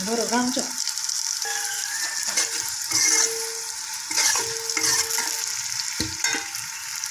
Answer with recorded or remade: recorded